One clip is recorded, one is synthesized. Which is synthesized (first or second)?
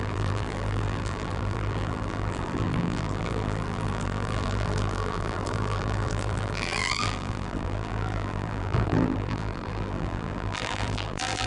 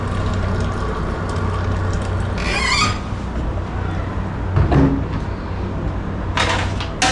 first